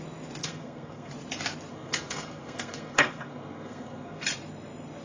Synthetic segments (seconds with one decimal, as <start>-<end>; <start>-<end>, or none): 0.4-1.1; 1.7-4.2